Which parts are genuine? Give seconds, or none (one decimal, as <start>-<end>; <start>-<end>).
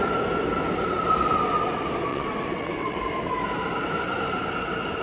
0.0-2.1; 3.0-5.0